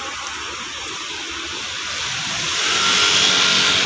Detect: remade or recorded recorded